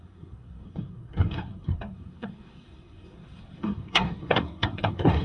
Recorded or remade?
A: remade